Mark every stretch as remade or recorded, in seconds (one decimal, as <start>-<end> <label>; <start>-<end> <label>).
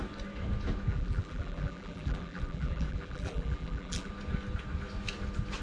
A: 0.0-0.9 recorded; 0.9-4.1 remade; 4.1-5.6 recorded